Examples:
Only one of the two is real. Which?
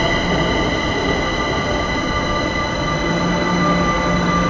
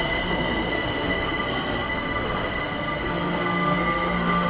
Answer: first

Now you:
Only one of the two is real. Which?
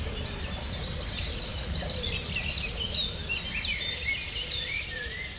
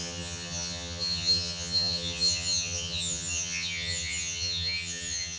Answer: first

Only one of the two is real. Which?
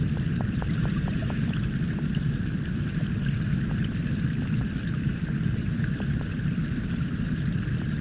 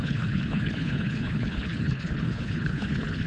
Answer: first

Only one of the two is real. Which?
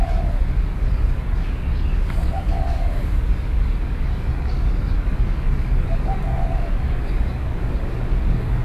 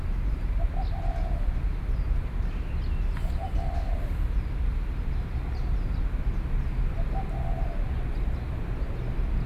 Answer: second